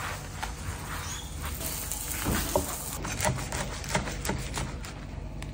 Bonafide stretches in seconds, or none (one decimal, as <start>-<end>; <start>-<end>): 0.0-5.5

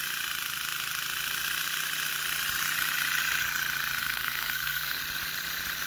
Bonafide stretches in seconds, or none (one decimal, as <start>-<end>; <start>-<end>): 0.0-4.0; 5.0-5.9

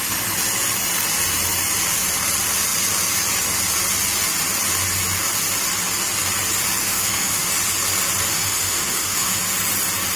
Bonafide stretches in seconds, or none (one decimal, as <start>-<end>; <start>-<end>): 0.0-6.8; 7.5-8.3; 9.4-10.2

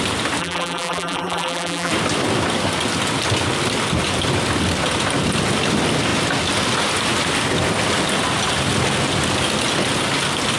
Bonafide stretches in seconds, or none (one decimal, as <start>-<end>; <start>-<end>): 0.0-0.4; 1.9-10.6

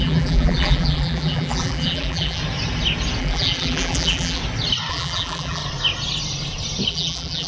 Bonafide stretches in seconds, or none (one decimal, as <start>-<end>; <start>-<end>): 2.4-3.2; 4.4-4.9; 5.6-6.9

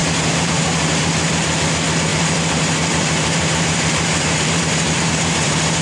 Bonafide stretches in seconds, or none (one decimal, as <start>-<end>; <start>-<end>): 1.1-2.1

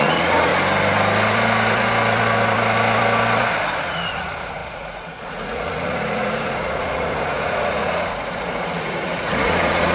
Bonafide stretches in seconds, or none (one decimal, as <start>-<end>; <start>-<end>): 0.5-3.9

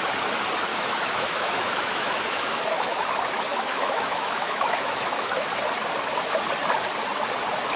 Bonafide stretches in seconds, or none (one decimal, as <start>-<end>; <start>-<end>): 0.0-0.7; 3.1-3.5; 5.6-7.8